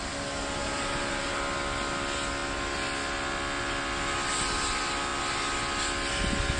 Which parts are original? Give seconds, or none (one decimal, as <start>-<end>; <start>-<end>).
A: 0.0-0.6; 1.4-6.6